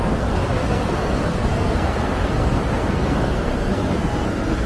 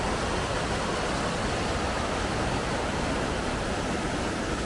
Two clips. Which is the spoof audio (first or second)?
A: first